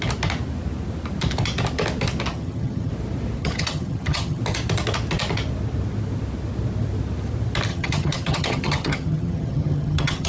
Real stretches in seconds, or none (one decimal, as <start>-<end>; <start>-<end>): 0.0-2.3; 2.9-3.4; 4.4-7.7